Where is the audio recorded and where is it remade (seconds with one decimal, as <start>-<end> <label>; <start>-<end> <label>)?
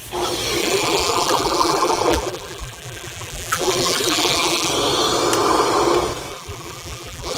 0.0-0.6 recorded; 0.6-4.7 remade; 4.7-6.3 recorded; 6.3-7.4 remade